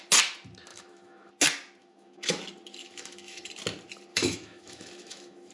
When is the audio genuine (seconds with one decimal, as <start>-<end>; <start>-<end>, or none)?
0.0-0.7; 1.3-1.8; 2.4-2.8; 3.5-4.1